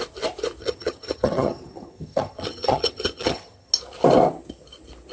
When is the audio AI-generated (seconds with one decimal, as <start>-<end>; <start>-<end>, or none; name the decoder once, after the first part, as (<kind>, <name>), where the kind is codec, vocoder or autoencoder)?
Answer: 0.6-3.7 (vocoder, HiFi-GAN)